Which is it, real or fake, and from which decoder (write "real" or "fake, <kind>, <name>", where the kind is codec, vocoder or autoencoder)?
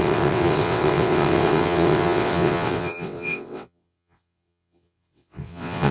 fake, vocoder, WaveNeXt